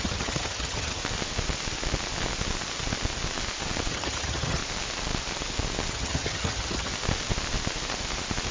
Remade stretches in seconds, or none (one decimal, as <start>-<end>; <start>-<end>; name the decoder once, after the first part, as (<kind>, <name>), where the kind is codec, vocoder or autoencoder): 0.0-1.0 (vocoder, HiFi-GAN); 3.9-4.6; 5.9-6.9